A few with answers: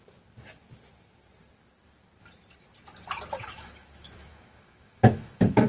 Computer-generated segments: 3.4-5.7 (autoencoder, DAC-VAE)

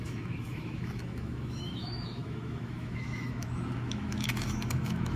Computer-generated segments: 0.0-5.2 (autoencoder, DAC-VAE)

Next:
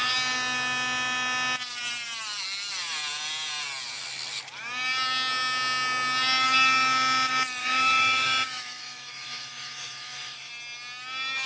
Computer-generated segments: 7.6-10.5 (autoencoder, DAC-VAE)